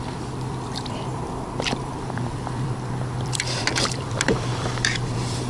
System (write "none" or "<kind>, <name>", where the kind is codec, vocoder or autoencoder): vocoder, BigVGAN v2